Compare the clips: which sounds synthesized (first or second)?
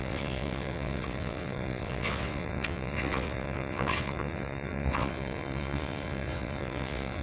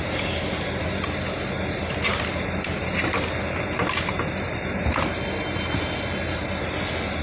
first